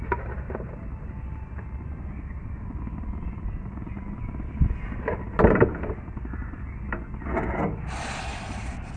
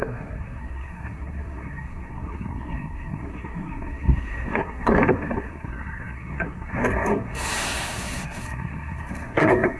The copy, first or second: second